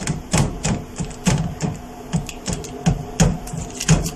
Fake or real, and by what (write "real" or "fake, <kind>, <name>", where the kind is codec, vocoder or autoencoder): real